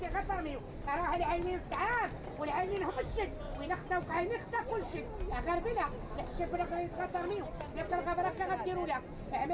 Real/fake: real